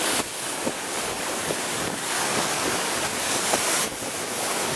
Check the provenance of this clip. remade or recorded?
remade